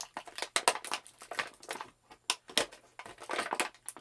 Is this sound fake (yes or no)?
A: no